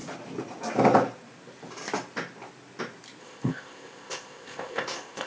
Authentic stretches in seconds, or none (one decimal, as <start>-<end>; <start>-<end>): 0.0-3.2